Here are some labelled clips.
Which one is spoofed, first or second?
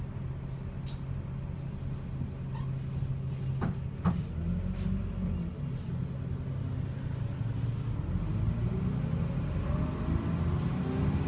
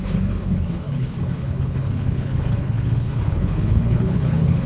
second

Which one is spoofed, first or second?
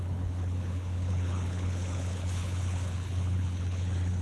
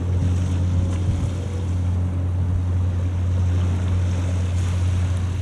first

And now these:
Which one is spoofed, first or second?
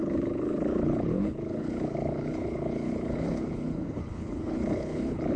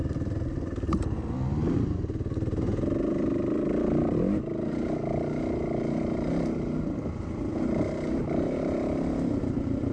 first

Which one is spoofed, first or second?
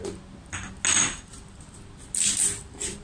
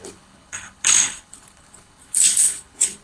second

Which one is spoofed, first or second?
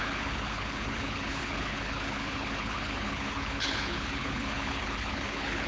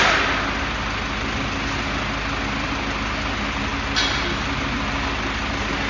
first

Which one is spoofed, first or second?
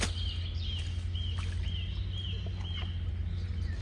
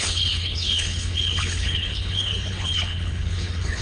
second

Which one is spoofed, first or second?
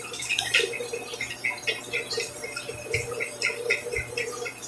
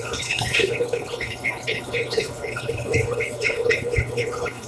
second